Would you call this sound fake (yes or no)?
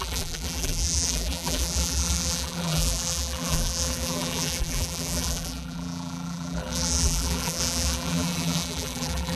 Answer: yes